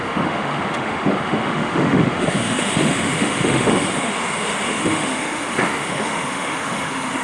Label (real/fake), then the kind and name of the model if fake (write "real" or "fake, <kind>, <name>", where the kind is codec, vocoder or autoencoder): fake, autoencoder, DAC-VAE